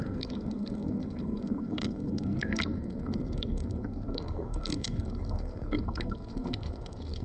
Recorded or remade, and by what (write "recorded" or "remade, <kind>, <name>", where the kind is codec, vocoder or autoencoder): remade, codec, SNAC